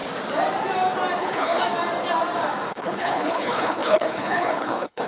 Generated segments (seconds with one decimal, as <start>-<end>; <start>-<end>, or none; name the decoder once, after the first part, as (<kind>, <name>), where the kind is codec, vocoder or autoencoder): 1.2-1.6 (codec, HILCodec); 2.7-5.1